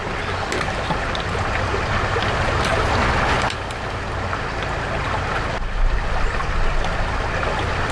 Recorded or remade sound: recorded